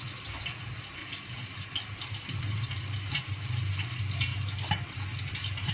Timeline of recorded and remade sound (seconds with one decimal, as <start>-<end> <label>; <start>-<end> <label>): 0.0-5.7 recorded